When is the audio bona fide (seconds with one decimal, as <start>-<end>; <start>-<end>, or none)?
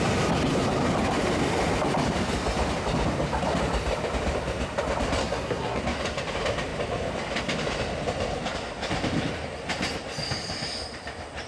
0.0-5.2; 5.8-11.5